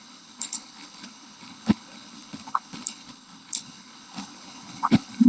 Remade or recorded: remade